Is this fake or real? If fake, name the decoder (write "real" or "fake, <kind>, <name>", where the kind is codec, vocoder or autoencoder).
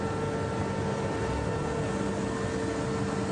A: real